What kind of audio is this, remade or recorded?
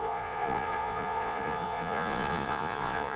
remade